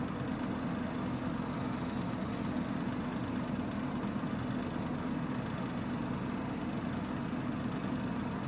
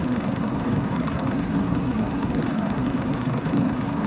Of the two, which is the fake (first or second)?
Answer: second